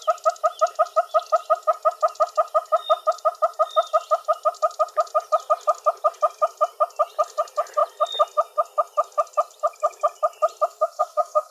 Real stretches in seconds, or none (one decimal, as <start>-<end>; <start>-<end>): 0.0-10.7